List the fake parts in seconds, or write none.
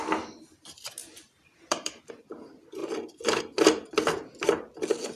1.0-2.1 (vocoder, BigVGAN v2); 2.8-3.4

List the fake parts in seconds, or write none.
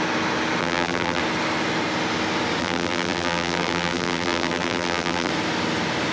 0.6-1.2 (vocoder, BigVGAN v2); 2.6-5.3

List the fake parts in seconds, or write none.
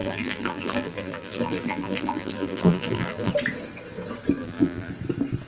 0.0-3.3 (vocoder, BigVGAN v2); 4.4-4.9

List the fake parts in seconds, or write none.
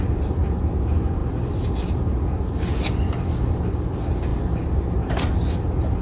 none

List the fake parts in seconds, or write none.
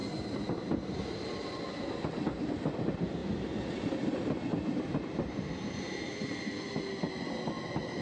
0.0-1.3 (vocoder, BigVGAN v2); 4.5-6.4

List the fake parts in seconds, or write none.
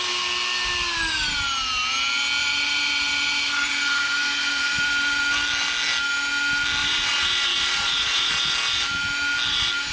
2.4-5.2 (vocoder, BigVGAN v2); 6.8-8.3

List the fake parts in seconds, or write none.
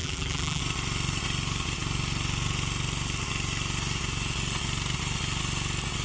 0.0-0.6 (vocoder, BigVGAN v2)